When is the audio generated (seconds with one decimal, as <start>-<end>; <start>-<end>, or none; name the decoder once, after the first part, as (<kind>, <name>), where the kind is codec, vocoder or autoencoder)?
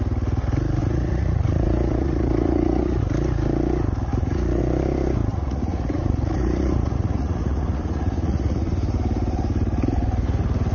0.8-3.0 (vocoder, Vocos); 4.1-4.6; 5.3-8.7